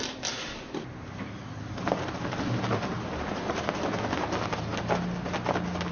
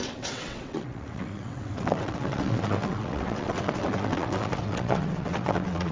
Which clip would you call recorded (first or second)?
first